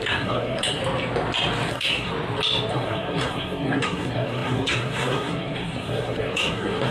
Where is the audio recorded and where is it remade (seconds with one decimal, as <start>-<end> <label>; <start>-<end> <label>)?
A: 0.0-0.8 remade; 0.8-1.7 recorded; 1.7-2.1 remade; 2.1-2.7 recorded; 2.7-6.9 remade

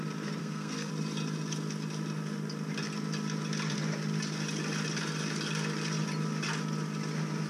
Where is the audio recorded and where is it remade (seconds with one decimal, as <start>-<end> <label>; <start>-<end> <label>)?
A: 0.0-0.4 recorded; 0.4-0.9 remade; 0.9-7.5 recorded

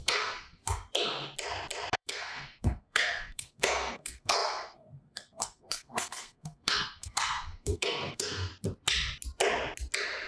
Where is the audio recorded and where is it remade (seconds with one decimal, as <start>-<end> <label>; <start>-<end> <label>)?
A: 0.0-0.6 remade; 0.6-1.9 recorded; 1.9-8.5 remade; 8.5-10.3 recorded

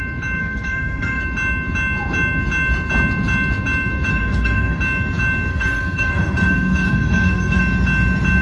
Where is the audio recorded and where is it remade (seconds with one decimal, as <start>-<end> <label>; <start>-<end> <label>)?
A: 0.0-0.4 recorded; 0.4-1.2 remade; 1.2-4.1 recorded; 4.1-4.8 remade; 4.8-5.5 recorded; 5.5-7.6 remade; 7.6-8.4 recorded

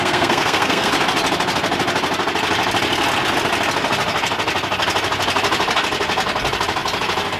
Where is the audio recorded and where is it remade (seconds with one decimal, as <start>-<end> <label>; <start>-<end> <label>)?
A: 0.0-0.9 remade; 0.9-7.4 recorded

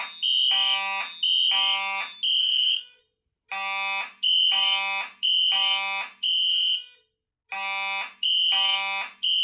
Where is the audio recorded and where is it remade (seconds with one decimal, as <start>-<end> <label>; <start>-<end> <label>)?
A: 0.0-2.4 recorded; 2.4-3.0 remade; 3.0-9.4 recorded